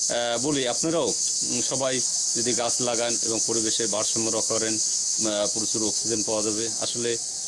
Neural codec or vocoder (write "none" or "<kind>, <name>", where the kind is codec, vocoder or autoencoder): autoencoder, DAC-VAE